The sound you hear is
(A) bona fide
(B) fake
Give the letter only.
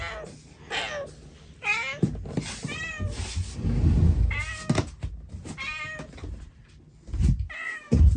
A